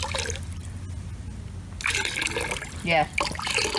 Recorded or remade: recorded